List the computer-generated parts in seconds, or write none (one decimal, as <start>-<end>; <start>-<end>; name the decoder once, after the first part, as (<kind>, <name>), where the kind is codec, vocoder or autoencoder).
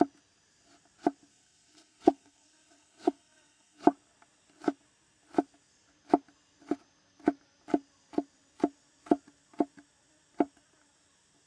1.3-3.8 (codec, SNAC)